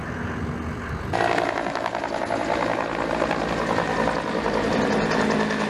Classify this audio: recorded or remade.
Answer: recorded